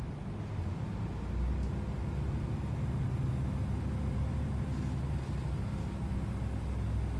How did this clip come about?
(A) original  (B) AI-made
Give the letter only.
A